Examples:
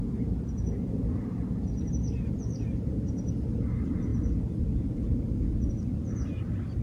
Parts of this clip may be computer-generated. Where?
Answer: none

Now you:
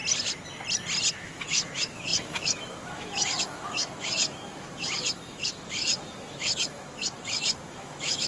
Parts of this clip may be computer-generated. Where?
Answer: 1.1-8.3

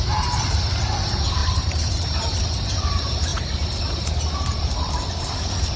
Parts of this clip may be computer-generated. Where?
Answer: 1.4-2.3; 3.3-4.9

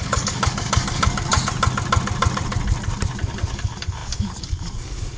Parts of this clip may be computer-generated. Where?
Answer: 0.0-1.3; 3.5-5.2

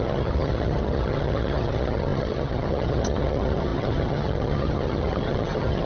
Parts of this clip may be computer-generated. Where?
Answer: 0.0-5.9

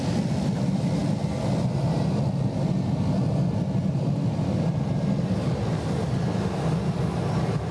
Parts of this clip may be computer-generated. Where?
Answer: none

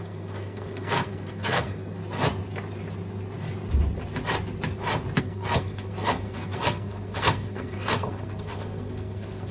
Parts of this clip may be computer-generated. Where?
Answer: 0.0-2.0; 5.2-9.5

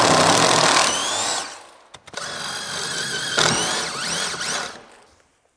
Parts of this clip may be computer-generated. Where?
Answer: none